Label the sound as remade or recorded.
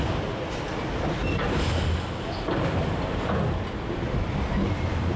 recorded